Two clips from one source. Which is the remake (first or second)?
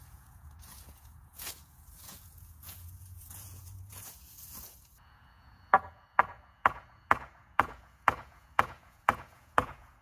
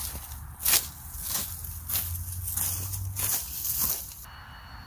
first